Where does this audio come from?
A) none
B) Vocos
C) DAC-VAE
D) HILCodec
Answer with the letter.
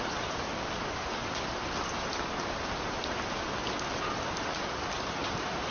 A